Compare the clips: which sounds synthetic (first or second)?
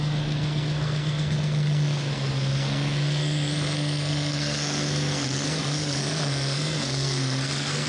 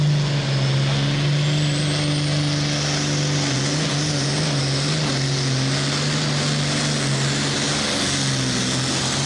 first